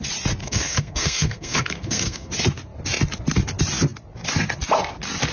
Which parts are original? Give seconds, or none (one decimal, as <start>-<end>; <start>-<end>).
0.0-0.4; 2.3-5.3